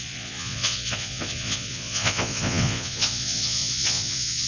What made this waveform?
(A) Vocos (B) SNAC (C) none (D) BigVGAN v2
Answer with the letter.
A